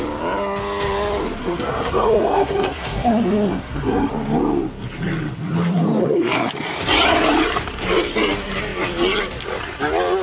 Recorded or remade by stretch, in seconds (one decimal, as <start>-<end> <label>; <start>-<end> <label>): 0.0-1.4 recorded; 1.4-4.1 remade; 4.1-6.0 recorded; 6.0-6.5 remade; 6.5-10.2 recorded